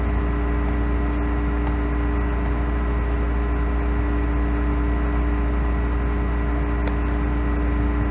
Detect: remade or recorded recorded